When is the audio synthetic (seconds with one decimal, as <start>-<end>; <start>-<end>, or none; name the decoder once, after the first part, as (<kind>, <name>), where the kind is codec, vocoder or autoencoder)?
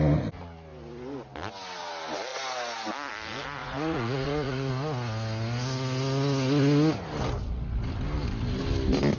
3.6-4.7 (vocoder, Vocos)